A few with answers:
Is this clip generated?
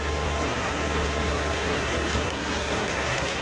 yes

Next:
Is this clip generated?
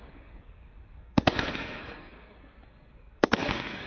yes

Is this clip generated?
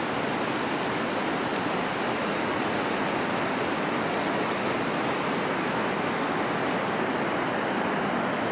no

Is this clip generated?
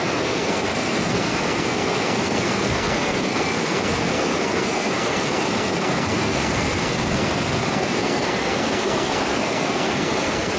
yes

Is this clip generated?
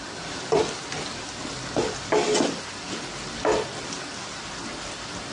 no